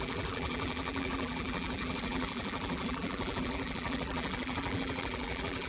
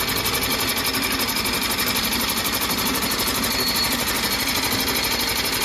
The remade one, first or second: first